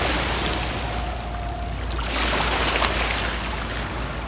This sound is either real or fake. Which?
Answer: real